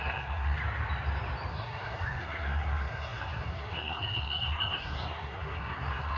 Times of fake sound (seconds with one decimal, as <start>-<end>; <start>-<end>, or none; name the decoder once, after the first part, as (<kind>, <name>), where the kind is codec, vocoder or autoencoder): 0.0-0.6 (codec, SNAC); 1.5-6.2